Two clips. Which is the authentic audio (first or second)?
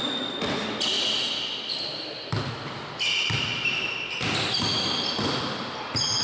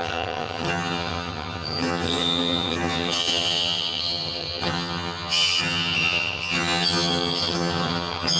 first